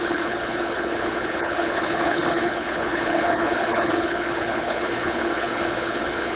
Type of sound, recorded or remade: remade